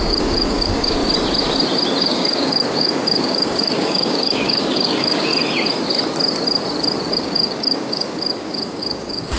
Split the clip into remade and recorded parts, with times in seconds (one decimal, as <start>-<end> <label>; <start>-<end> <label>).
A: 0.0-1.0 remade; 1.0-2.0 recorded; 2.0-5.3 remade; 5.3-7.1 recorded; 7.1-9.4 remade